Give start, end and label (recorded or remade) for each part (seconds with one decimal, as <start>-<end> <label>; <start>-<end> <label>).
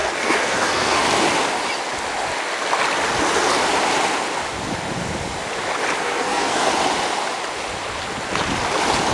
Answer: 0.0-1.0 remade; 1.0-6.0 recorded; 6.0-6.7 remade; 6.7-9.1 recorded